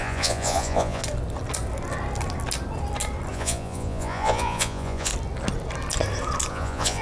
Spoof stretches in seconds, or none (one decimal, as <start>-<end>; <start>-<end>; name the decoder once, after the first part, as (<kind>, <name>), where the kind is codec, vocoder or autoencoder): 0.0-1.0 (vocoder, Vocos); 3.3-5.1; 6.5-7.0